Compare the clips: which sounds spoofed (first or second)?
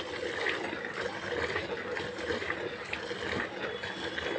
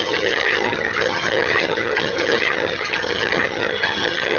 second